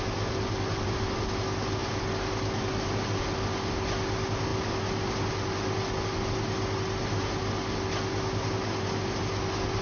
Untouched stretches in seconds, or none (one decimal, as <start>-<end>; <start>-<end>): 0.0-9.8